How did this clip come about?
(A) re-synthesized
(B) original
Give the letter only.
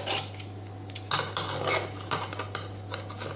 B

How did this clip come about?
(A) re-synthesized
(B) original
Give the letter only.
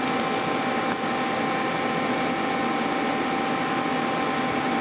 B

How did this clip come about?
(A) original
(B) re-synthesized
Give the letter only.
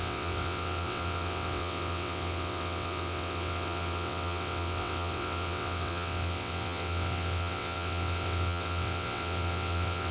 B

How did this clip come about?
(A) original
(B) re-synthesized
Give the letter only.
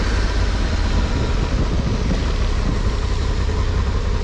A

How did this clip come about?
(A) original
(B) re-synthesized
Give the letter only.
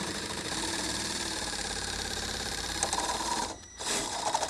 B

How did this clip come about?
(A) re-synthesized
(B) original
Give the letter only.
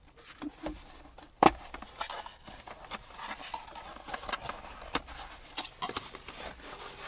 B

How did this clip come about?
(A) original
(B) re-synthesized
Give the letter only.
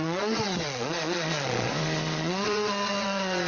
B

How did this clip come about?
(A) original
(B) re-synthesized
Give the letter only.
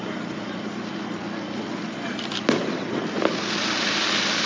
B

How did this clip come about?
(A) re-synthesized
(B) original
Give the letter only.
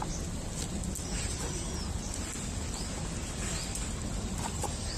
B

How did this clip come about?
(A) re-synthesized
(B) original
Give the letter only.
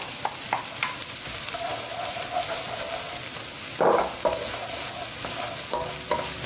B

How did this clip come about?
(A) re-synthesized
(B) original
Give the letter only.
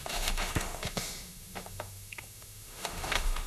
A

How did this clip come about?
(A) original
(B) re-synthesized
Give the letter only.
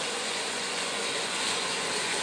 B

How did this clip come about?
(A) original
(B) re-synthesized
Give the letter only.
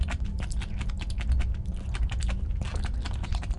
A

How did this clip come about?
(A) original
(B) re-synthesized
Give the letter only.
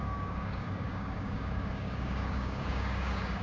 B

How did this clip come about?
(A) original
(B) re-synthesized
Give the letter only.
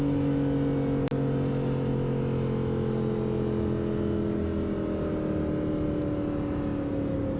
A